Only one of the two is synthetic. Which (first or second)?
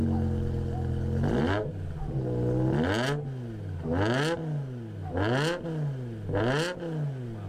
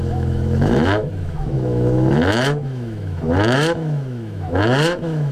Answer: second